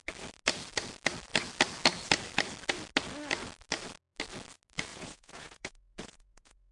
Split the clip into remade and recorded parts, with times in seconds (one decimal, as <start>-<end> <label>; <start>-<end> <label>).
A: 0.0-4.9 recorded; 4.9-6.7 remade